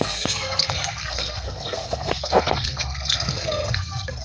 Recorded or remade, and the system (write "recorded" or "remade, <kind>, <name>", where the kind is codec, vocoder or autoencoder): remade, codec, SNAC